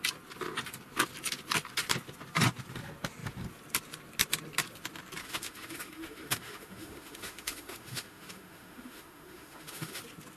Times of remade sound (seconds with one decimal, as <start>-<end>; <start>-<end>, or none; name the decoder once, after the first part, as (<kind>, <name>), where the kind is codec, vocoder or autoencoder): 5.2-10.0 (autoencoder, DAC-VAE)